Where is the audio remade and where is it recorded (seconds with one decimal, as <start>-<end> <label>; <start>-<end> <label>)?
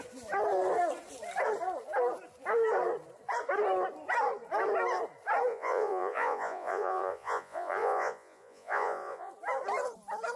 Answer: 0.0-5.5 recorded; 5.5-9.3 remade; 9.3-10.4 recorded